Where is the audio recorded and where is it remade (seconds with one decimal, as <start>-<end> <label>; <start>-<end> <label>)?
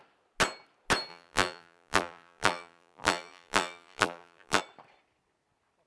0.0-1.1 recorded; 1.1-4.6 remade; 4.6-5.9 recorded